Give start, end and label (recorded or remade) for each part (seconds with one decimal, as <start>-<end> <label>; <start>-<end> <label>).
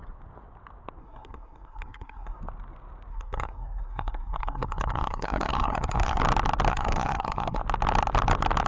0.0-1.0 recorded; 1.0-2.4 remade; 2.4-3.1 recorded; 3.1-6.2 remade; 6.2-6.7 recorded; 6.7-7.6 remade; 7.6-8.7 recorded